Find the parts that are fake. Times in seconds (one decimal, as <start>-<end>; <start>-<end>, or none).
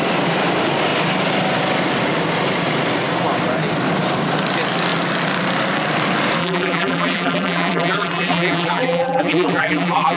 6.4-10.2